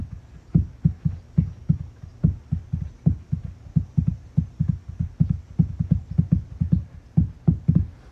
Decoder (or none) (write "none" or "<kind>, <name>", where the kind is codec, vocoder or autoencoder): none